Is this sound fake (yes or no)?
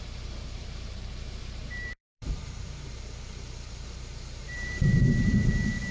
yes